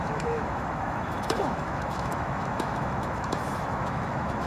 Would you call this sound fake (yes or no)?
yes